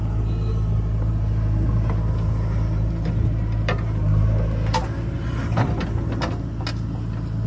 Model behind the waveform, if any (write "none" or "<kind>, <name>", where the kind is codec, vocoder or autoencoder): none